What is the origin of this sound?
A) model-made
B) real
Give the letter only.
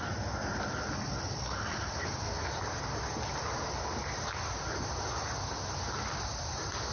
B